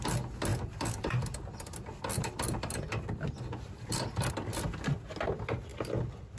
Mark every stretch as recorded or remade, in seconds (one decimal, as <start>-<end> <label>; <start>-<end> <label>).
0.0-0.5 recorded; 0.5-4.3 remade; 4.3-6.4 recorded

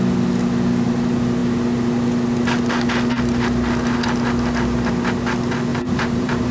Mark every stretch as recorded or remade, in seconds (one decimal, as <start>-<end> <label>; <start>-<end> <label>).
0.0-5.7 recorded; 5.7-6.5 remade

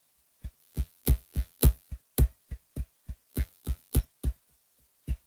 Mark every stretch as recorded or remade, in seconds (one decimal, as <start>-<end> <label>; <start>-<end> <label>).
0.0-0.6 recorded; 0.6-1.9 remade; 1.9-3.3 recorded; 3.3-4.0 remade; 4.0-5.3 recorded

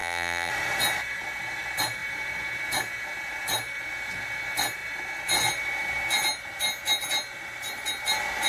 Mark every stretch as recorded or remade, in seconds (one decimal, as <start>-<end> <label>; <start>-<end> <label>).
0.0-0.5 remade; 0.5-8.5 recorded

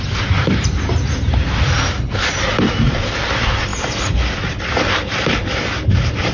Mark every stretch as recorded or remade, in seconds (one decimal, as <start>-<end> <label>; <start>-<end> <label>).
0.0-3.7 remade; 3.7-4.6 recorded; 4.6-6.3 remade

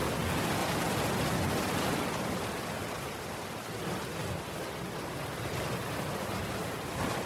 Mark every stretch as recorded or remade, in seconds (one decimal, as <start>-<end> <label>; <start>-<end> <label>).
0.0-0.6 recorded; 0.6-1.1 remade; 1.1-6.6 recorded; 6.6-7.3 remade

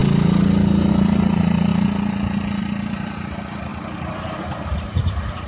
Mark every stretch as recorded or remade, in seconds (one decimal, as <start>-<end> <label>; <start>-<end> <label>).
0.0-0.9 recorded; 0.9-1.7 remade; 1.7-2.6 recorded; 2.6-5.5 remade